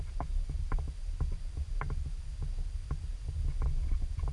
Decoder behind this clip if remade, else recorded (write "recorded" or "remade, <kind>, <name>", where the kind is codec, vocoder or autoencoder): recorded